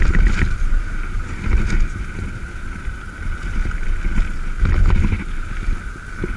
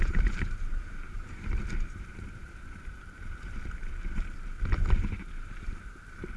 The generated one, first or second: second